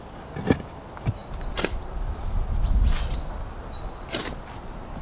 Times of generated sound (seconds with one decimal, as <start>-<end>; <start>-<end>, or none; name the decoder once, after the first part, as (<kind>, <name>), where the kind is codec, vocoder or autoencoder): none